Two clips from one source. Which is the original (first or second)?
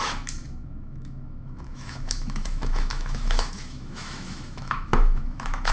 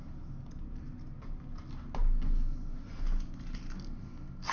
second